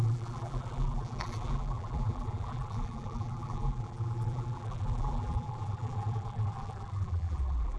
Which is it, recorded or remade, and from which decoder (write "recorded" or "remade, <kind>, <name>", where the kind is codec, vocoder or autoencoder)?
remade, vocoder, BigVGAN v2